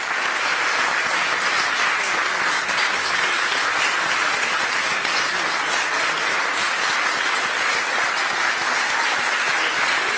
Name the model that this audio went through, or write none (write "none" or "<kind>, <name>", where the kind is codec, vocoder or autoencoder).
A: none